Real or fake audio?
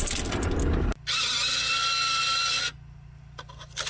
real